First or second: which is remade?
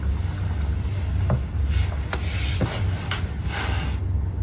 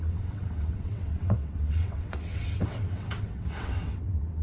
second